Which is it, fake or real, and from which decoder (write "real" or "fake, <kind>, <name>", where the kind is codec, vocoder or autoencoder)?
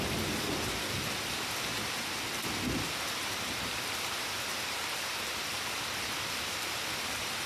real